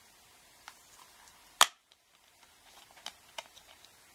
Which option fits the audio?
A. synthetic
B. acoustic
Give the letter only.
A